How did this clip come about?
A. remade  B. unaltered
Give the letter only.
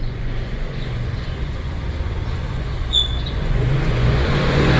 A